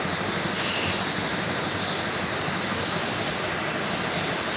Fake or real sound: real